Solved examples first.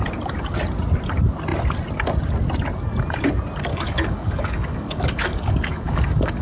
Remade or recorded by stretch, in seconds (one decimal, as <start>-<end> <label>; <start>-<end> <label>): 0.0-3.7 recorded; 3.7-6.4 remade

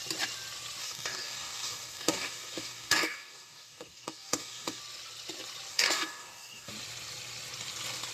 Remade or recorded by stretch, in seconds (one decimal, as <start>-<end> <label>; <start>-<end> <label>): 0.0-0.8 recorded; 0.8-4.8 remade; 4.8-5.7 recorded; 5.7-6.7 remade; 6.7-8.1 recorded

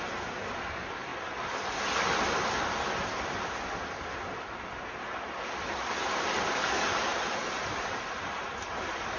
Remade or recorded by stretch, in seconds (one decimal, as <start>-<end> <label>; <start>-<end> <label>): 0.0-9.2 recorded

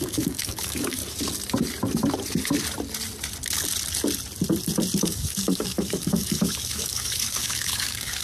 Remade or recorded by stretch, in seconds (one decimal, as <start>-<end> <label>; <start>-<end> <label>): 0.0-1.0 remade; 1.0-5.0 recorded; 5.0-8.2 remade

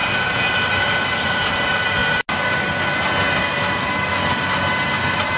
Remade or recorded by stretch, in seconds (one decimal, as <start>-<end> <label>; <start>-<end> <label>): 0.0-5.4 recorded

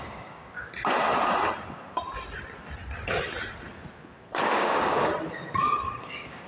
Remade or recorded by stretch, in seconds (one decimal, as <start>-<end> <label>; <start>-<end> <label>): 0.0-0.5 remade; 0.5-4.4 recorded; 4.4-5.1 remade; 5.1-6.0 recorded; 6.0-6.5 remade

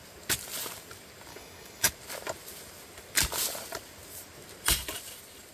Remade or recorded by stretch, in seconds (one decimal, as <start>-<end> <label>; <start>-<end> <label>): 0.0-1.3 recorded; 1.3-1.9 remade; 1.9-5.5 recorded